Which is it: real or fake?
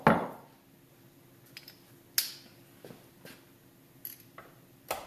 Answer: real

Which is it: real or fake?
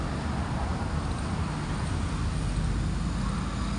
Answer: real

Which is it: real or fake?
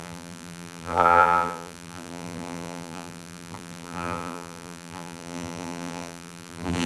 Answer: fake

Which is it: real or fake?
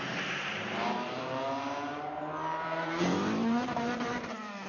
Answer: fake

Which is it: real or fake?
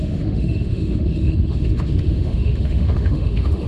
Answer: fake